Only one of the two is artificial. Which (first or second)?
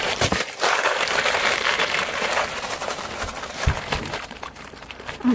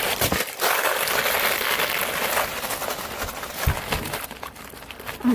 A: first